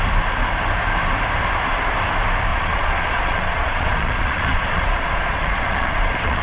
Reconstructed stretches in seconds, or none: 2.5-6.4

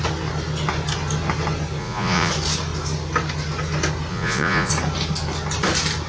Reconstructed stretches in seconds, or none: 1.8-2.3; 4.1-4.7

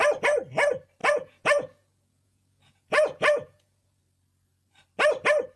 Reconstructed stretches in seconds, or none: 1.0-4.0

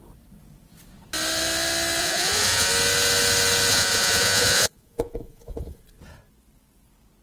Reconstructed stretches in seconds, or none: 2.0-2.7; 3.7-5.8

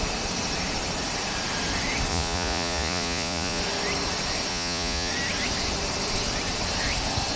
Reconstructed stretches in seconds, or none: 2.1-3.6; 4.5-5.1